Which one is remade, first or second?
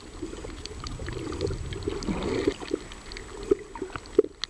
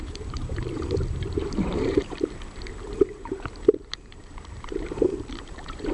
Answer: second